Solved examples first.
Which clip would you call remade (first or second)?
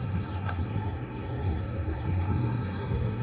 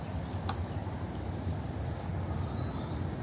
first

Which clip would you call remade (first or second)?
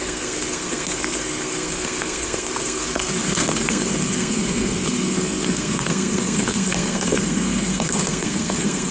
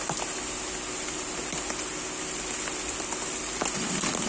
first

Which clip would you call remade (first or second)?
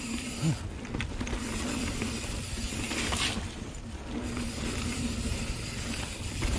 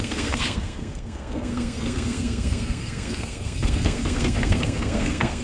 second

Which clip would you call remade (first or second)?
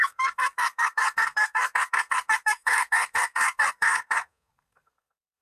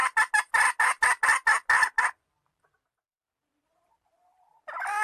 first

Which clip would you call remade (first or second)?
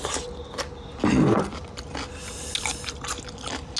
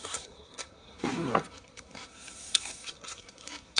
second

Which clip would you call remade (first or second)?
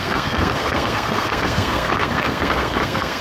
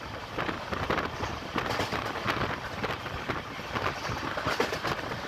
first